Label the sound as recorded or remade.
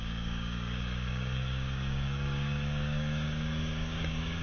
remade